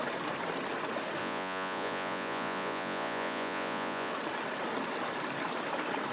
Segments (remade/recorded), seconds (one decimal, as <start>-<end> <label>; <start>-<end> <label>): 0.0-1.2 recorded; 1.2-4.1 remade; 4.1-6.1 recorded